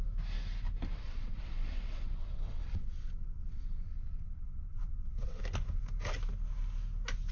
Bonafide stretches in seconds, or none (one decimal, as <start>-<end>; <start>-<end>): 0.0-1.0; 5.4-7.3